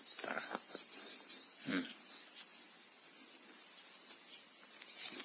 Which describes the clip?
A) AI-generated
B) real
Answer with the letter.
B